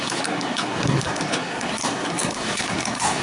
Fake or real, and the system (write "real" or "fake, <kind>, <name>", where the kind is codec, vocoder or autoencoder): fake, codec, SNAC